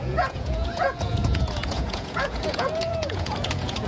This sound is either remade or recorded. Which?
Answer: remade